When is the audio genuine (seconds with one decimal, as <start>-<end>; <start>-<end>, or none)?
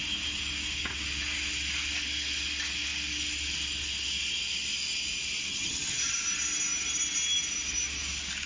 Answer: 0.0-5.5; 6.1-8.5